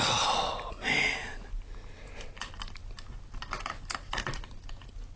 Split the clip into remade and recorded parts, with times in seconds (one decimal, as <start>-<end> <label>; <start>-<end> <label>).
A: 0.0-5.2 recorded